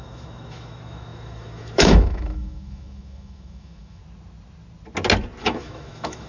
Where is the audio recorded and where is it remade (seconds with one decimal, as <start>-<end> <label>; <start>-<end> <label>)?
0.0-4.0 remade; 4.0-5.4 recorded; 5.4-6.3 remade